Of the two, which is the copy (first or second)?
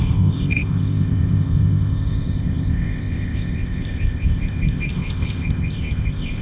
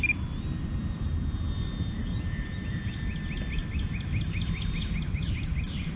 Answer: first